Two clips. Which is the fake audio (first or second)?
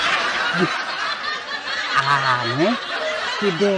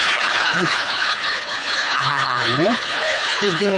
second